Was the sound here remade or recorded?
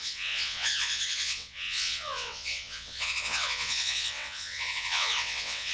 remade